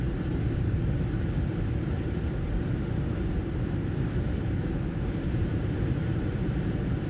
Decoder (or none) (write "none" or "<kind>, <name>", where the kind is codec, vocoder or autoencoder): vocoder, BigVGAN v2